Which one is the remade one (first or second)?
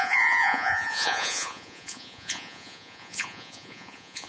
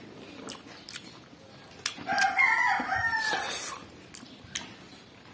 first